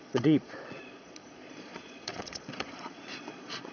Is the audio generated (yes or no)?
yes